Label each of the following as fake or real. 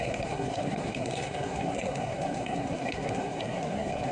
fake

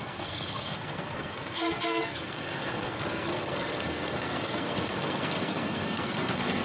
fake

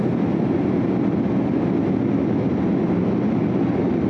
real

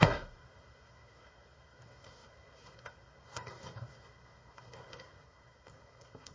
fake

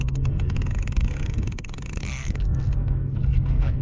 fake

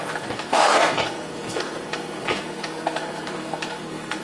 fake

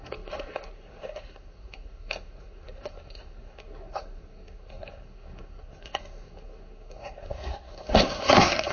fake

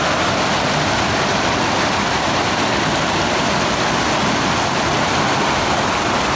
real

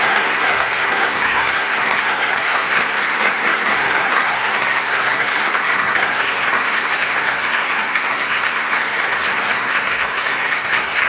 fake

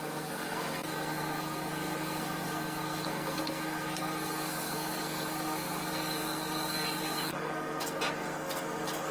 fake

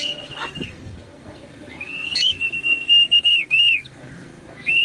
fake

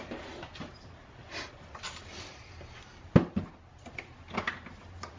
real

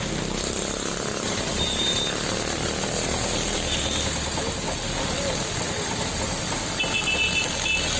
real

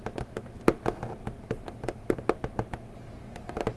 real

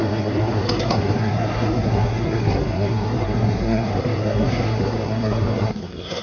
fake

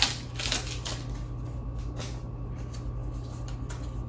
real